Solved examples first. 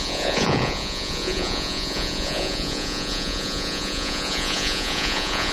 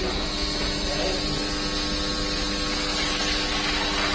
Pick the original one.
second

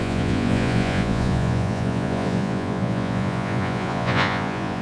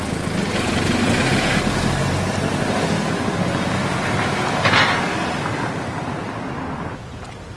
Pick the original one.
second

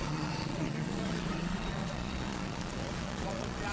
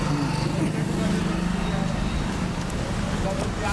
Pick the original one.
second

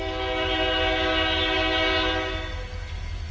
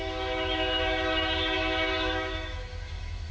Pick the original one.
first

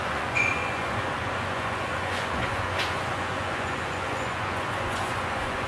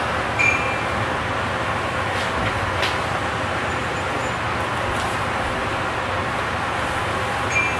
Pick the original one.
second